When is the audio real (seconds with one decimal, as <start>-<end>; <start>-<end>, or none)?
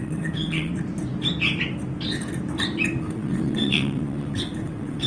0.7-3.0